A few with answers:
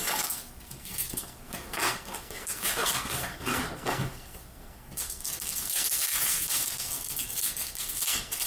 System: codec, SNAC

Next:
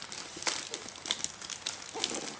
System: none